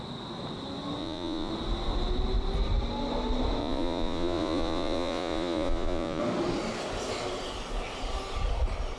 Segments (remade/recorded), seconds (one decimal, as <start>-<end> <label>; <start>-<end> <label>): 0.0-1.0 recorded; 1.0-1.5 remade; 1.5-3.6 recorded; 3.6-6.2 remade; 6.2-9.0 recorded